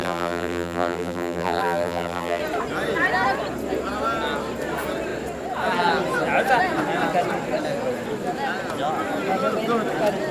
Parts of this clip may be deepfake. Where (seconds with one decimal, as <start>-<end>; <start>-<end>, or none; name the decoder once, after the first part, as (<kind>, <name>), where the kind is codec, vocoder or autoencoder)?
0.0-2.4 (vocoder, BigVGAN v2)